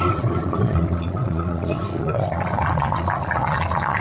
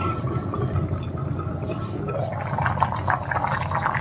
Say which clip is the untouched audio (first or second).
second